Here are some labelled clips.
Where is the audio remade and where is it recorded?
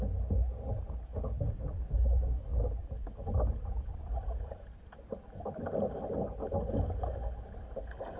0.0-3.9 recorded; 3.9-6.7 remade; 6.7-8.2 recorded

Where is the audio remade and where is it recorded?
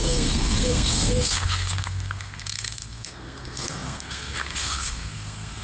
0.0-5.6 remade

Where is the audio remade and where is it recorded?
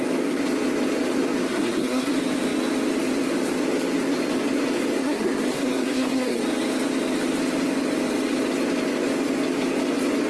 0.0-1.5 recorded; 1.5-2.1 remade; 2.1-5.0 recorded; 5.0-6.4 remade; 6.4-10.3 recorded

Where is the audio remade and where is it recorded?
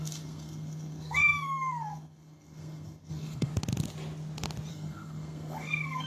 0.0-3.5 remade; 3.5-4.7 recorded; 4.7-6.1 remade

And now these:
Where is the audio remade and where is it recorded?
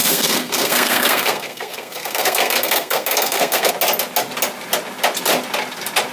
0.0-3.7 remade; 3.7-6.1 recorded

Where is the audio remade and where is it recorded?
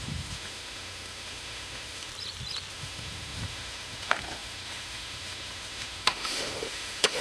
0.0-2.1 remade; 2.1-2.7 recorded; 2.7-7.2 remade